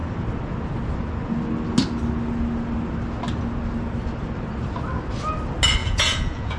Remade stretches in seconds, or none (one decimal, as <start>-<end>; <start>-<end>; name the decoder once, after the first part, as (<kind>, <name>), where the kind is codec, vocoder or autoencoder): 5.8-6.6 (vocoder, Vocos)